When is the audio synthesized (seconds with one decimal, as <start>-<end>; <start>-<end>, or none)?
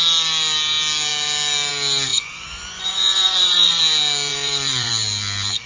2.1-3.8; 4.3-4.9